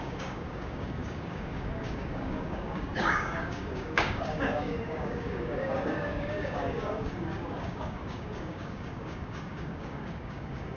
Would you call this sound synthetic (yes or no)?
yes